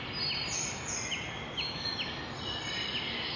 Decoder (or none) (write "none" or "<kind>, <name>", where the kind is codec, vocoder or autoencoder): none